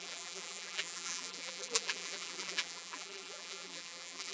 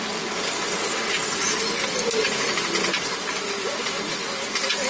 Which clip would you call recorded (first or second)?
second